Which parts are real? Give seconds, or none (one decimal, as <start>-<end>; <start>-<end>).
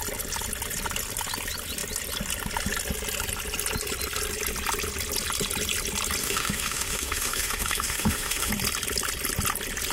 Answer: 0.0-6.2; 8.5-9.9